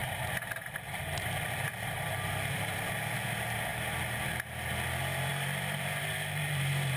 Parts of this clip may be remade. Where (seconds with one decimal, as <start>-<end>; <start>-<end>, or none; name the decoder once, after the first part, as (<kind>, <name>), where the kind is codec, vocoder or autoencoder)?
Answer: 0.0-2.9 (vocoder, BigVGAN v2); 5.3-7.0